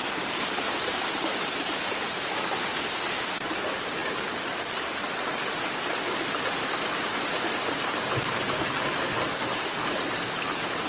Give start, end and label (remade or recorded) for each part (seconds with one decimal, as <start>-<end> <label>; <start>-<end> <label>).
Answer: 0.0-9.3 recorded; 9.3-9.8 remade; 9.8-10.9 recorded